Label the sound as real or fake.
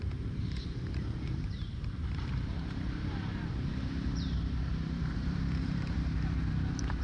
fake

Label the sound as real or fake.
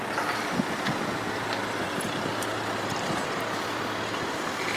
real